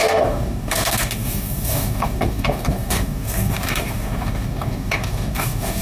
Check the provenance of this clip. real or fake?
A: fake